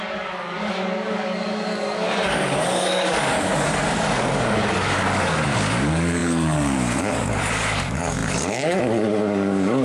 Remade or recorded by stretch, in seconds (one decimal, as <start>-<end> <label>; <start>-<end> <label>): 0.0-9.8 remade